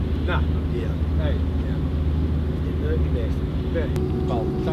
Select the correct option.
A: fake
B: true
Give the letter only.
B